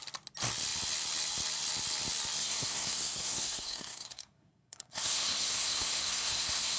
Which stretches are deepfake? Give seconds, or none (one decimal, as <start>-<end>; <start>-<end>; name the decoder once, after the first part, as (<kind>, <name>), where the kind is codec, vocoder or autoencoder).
2.4-6.8 (codec, SNAC)

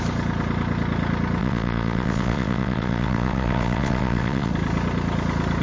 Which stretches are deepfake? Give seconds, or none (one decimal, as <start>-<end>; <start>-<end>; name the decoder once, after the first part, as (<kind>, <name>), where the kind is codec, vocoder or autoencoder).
1.4-4.5 (vocoder, WaveNeXt)

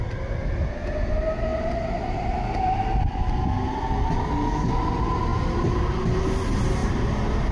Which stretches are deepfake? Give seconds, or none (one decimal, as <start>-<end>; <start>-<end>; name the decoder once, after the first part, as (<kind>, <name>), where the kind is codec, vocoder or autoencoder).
1.5-3.0 (vocoder, BigVGAN v2); 6.8-7.5

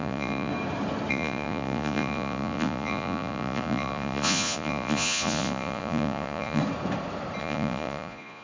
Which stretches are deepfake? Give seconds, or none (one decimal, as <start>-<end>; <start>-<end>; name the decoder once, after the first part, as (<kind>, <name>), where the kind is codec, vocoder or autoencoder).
0.0-0.5 (vocoder, Vocos); 1.1-6.6; 7.4-8.4